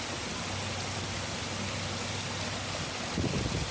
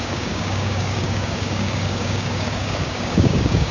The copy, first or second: second